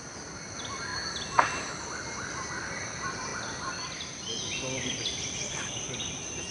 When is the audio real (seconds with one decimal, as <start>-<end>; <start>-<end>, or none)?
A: 0.0-6.5